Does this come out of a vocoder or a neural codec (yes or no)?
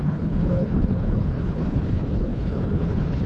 yes